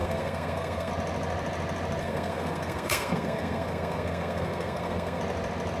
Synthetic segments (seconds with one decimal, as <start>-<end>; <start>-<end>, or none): 0.0-0.9; 2.0-5.2